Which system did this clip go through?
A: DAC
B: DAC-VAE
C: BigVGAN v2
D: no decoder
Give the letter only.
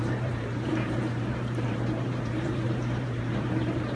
C